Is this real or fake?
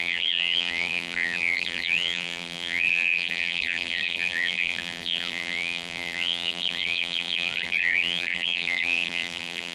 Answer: fake